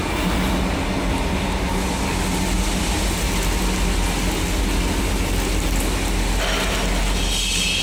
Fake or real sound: real